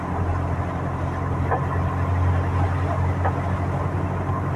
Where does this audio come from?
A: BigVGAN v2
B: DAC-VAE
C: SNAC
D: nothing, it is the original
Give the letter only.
D